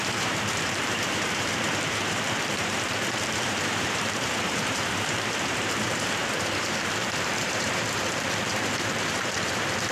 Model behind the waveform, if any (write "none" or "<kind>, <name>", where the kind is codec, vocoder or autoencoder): vocoder, BigVGAN v2